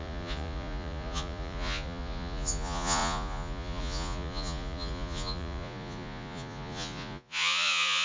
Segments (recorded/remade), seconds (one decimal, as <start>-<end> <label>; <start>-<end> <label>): 0.0-8.0 remade